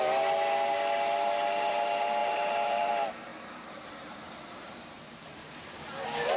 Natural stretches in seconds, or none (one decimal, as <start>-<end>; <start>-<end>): 0.0-2.2; 2.9-3.3; 5.8-6.4